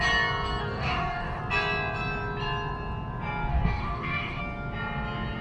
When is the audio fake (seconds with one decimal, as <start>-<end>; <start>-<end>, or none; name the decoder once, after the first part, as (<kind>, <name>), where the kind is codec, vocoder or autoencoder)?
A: 0.6-1.4 (codec, DAC); 3.5-4.4